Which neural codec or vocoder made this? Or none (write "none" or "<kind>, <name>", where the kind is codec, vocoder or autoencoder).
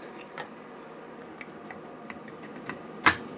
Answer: none